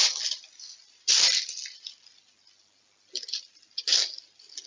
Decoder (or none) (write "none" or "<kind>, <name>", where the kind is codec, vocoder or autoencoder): none